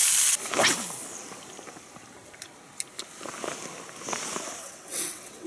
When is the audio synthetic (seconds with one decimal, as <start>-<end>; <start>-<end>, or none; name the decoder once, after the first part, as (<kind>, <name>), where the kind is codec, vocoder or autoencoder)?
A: 4.6-5.5 (vocoder, WaveNeXt)